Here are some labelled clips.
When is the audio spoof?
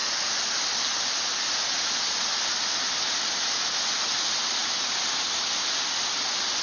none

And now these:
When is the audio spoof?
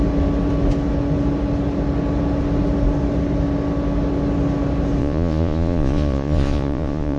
5.0-7.2 (vocoder, Vocos)